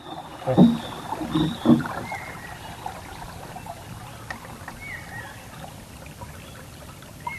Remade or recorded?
recorded